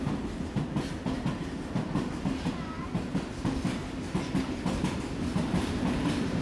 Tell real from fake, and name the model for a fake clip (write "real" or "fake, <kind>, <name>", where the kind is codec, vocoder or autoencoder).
real